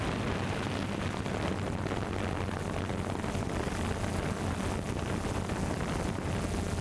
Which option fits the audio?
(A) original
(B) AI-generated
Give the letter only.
A